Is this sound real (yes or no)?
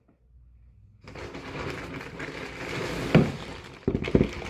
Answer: yes